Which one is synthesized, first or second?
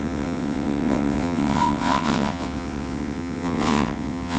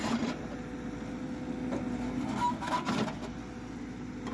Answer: first